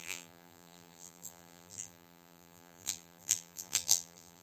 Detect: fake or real fake